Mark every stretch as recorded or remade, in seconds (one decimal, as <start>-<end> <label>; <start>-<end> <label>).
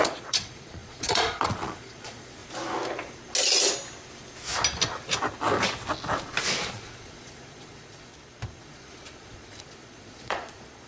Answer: 0.0-2.4 remade; 2.4-6.7 recorded; 6.7-8.1 remade; 8.1-8.6 recorded; 8.6-10.9 remade